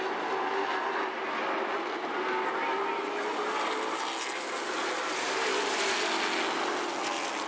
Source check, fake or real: real